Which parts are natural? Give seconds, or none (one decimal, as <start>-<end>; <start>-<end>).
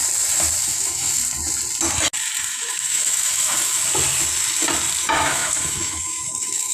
0.0-0.6; 1.2-2.5; 3.8-5.0